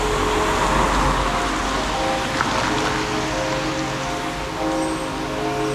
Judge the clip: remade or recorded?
recorded